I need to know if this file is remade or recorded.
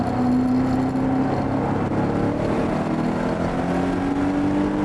recorded